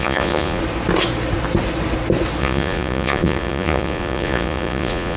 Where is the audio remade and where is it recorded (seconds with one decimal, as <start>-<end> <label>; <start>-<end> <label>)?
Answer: 0.0-0.6 remade; 0.6-2.4 recorded; 2.4-5.2 remade